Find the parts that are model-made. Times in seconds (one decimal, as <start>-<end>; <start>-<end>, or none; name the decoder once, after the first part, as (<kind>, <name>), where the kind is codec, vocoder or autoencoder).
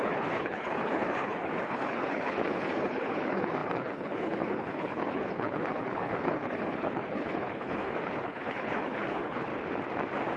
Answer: 0.0-9.5 (codec, HILCodec)